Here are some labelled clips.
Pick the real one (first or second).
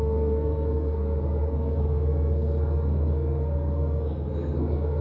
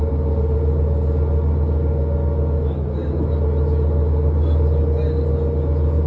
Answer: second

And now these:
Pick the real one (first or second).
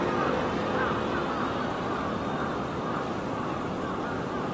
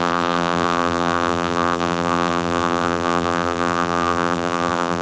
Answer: first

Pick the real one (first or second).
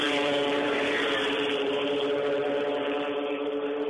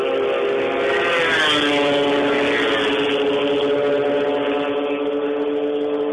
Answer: second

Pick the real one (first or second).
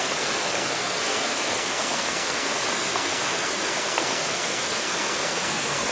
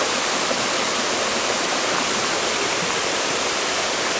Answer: second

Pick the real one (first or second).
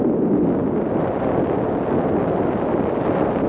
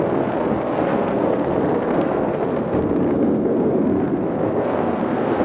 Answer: first